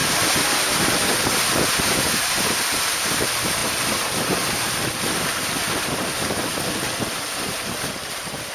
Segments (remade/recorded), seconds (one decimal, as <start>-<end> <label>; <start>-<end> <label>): 0.0-8.5 recorded